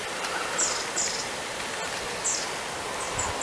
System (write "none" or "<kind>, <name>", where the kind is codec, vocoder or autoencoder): none